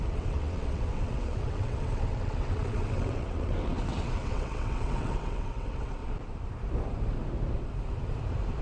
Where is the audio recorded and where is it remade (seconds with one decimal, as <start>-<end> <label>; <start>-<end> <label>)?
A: 0.0-6.0 remade; 6.0-8.6 recorded